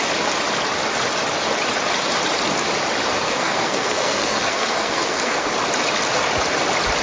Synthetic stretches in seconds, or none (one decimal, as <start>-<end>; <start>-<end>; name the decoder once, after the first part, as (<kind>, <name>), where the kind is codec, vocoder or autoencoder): 3.1-5.5 (codec, SNAC)